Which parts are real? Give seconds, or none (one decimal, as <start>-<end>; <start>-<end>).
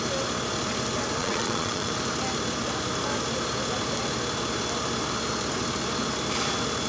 0.0-1.2; 1.9-6.9